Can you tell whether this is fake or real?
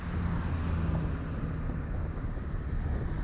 real